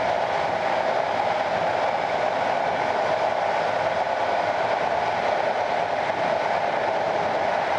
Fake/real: real